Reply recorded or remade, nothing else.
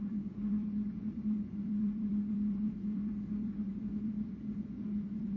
remade